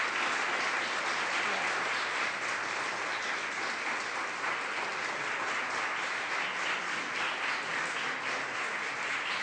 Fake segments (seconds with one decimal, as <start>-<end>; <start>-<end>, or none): none